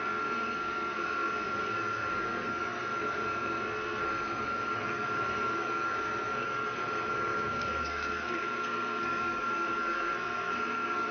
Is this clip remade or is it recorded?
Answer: remade